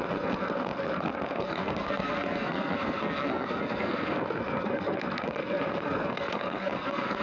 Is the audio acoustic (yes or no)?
no